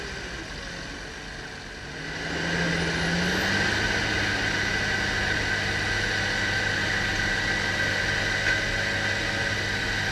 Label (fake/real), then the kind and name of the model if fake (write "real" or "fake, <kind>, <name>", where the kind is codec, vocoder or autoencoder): real